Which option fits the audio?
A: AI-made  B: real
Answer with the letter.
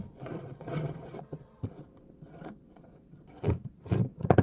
A